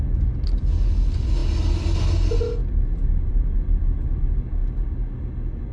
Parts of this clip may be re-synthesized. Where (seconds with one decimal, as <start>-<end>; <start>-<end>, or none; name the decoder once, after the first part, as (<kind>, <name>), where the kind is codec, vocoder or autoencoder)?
none